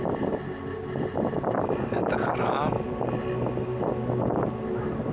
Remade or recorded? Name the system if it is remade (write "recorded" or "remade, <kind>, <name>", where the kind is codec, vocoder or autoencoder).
recorded